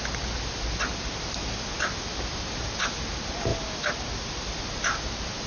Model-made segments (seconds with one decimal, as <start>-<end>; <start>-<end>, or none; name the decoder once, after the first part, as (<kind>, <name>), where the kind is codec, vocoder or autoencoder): none